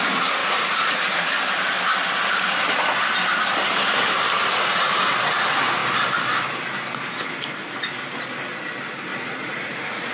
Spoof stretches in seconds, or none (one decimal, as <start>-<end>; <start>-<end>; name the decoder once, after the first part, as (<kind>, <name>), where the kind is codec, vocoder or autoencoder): 0.4-1.3 (vocoder, Vocos); 9.1-10.1